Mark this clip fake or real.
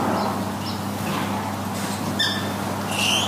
real